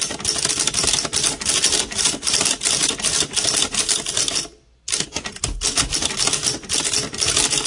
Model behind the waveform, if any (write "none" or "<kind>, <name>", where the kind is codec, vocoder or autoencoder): none